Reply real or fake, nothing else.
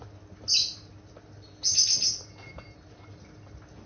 real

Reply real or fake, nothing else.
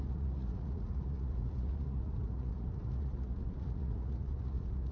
fake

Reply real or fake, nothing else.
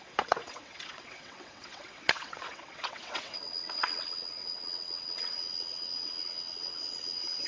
fake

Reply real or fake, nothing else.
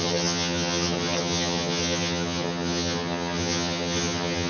fake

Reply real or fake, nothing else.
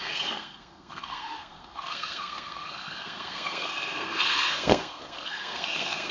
fake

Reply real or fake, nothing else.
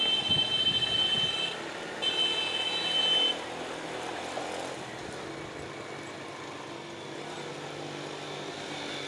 real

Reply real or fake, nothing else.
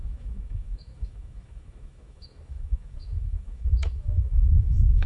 fake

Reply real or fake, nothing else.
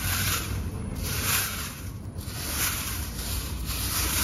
fake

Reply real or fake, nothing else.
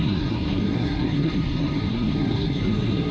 fake